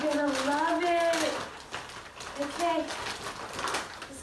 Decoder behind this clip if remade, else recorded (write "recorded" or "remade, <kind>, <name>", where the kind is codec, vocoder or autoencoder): recorded